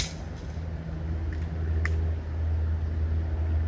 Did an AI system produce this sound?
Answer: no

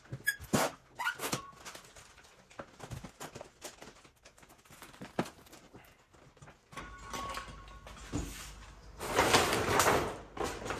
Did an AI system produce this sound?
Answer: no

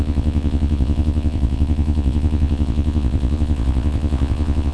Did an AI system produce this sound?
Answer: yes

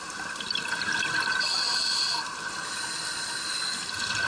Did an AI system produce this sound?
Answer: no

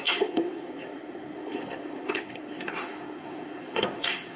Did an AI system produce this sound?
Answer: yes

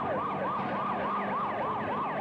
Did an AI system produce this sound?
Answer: no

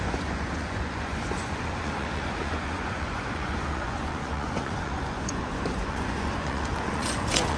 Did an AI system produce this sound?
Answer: yes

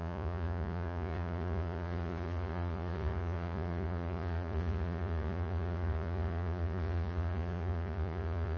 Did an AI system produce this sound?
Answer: yes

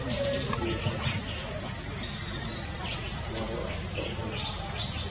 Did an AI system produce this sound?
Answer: no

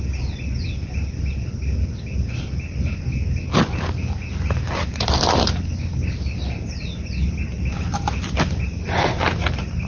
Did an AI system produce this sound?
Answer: no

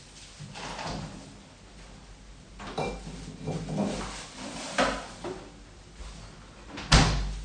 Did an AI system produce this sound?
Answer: no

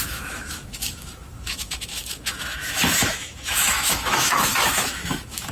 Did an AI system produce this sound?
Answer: yes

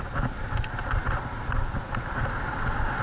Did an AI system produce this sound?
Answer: no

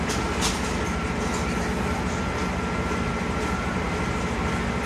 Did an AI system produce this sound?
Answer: no